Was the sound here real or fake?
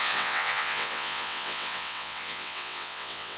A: fake